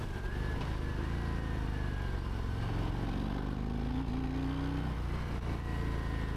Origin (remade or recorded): recorded